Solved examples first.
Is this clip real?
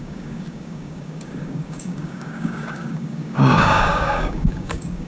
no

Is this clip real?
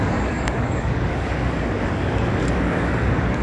no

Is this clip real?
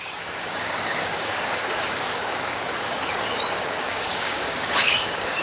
no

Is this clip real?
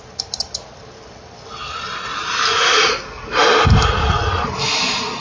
yes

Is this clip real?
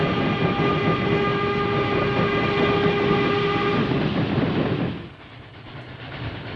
yes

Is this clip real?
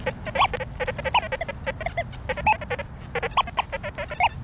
yes